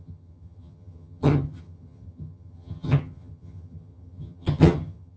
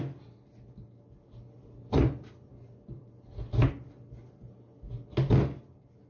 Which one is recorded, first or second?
second